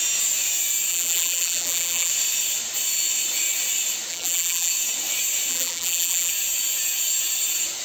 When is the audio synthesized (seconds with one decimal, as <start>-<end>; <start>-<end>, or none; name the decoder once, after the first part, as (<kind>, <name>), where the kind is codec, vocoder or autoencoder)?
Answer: 0.9-2.1 (vocoder, BigVGAN v2); 4.1-4.7; 5.5-6.3